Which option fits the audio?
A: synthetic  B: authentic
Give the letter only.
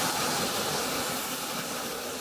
B